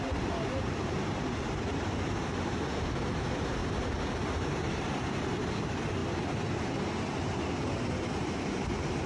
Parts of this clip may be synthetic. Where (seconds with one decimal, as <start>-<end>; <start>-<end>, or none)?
0.0-6.0; 7.5-9.1